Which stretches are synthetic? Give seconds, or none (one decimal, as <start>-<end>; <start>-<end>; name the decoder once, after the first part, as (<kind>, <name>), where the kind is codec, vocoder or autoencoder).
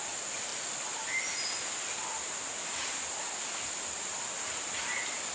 none